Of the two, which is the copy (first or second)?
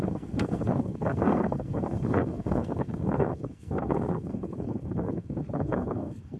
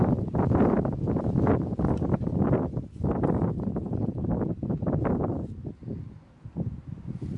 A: first